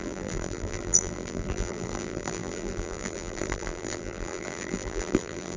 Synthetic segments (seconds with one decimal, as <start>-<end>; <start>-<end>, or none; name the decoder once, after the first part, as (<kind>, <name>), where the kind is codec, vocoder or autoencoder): 0.0-5.6 (vocoder, BigVGAN v2)